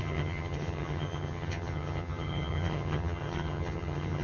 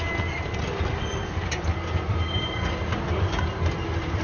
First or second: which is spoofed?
first